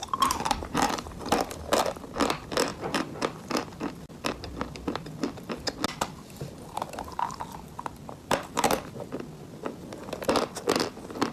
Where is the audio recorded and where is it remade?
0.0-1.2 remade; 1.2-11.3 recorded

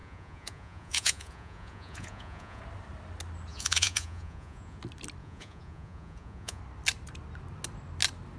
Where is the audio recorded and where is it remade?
0.0-2.6 remade; 2.6-3.5 recorded; 3.5-4.8 remade; 4.8-5.2 recorded; 5.2-6.6 remade; 6.6-8.4 recorded

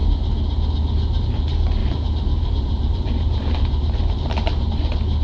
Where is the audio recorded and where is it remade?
0.0-1.8 recorded; 1.8-4.7 remade; 4.7-5.2 recorded